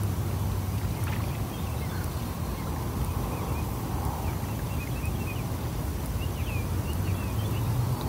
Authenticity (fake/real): real